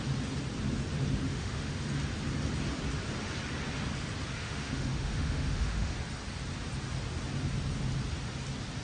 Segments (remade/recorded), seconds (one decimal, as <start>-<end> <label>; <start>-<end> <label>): 0.0-1.3 recorded; 1.3-1.8 remade; 1.8-4.4 recorded; 4.4-5.9 remade; 5.9-8.8 recorded